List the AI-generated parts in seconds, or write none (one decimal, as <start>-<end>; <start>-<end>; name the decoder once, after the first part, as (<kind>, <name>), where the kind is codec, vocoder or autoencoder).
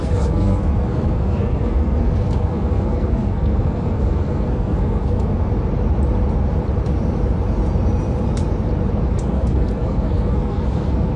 0.0-5.5 (codec, SNAC); 9.1-11.2